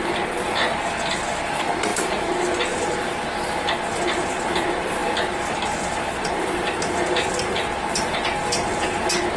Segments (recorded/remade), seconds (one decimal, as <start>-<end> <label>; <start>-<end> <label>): 0.0-9.4 recorded